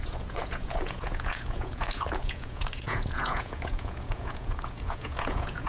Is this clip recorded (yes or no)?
no